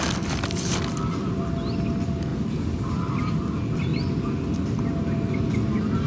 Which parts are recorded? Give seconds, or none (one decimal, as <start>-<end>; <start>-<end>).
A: 0.0-6.1

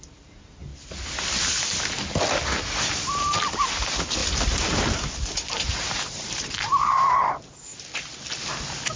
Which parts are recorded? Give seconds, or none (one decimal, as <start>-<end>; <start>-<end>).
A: 0.0-4.2; 7.8-9.0

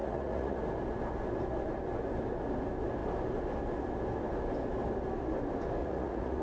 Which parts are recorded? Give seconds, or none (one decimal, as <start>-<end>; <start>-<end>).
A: 0.6-5.8

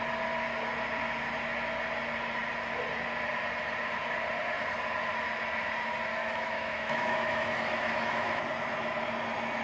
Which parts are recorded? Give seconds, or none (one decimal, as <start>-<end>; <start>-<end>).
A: 0.0-6.2; 8.4-9.6

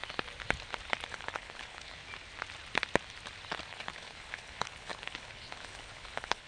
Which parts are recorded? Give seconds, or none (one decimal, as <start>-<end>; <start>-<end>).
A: 0.0-1.1; 2.0-3.7